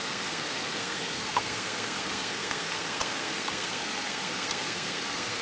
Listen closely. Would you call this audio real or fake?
fake